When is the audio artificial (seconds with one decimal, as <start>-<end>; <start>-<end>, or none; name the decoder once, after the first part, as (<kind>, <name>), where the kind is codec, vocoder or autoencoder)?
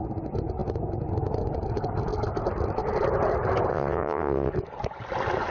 3.7-4.5 (vocoder, WaveNeXt)